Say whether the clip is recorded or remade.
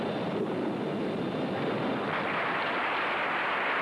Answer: remade